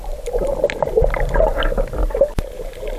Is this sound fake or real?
real